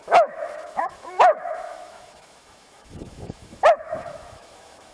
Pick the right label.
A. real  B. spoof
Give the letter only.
B